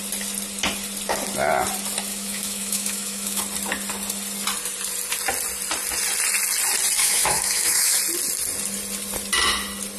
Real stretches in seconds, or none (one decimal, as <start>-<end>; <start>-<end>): 0.0-2.1; 3.4-7.0; 8.0-10.0